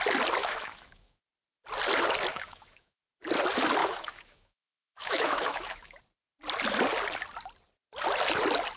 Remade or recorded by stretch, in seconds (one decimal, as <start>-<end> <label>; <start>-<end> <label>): 0.0-0.4 recorded; 0.4-1.2 remade; 1.2-2.3 recorded; 2.3-3.0 remade; 3.0-3.8 recorded; 3.8-6.0 remade; 6.0-8.8 recorded